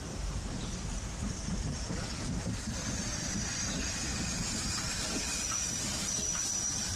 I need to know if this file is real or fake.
fake